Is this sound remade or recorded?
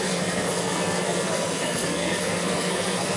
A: remade